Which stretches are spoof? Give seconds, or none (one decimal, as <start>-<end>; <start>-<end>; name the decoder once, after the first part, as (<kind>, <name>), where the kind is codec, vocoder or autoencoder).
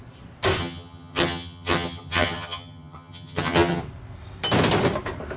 0.6-3.8 (vocoder, HiFi-GAN)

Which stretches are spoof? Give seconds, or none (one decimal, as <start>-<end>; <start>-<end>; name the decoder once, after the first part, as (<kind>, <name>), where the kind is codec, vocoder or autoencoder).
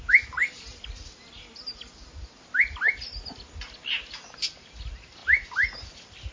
none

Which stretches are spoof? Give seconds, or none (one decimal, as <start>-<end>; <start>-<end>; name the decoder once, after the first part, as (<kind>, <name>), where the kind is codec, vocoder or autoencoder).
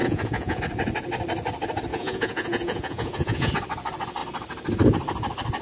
0.0-0.6 (vocoder, Vocos); 1.9-3.5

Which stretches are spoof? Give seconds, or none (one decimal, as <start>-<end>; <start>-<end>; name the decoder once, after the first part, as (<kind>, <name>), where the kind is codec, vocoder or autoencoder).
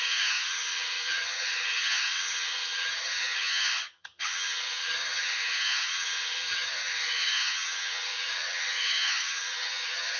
0.0-10.2 (vocoder, HiFi-GAN)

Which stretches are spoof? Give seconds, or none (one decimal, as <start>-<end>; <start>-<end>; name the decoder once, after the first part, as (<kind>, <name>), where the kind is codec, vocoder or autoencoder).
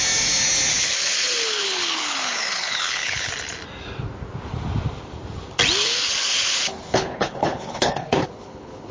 0.7-3.3 (codec, HILCodec); 5.8-8.9